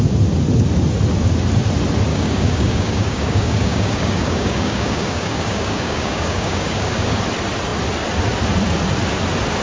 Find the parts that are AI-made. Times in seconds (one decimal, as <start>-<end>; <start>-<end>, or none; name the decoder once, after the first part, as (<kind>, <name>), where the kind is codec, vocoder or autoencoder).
2.1-7.2 (codec, DAC)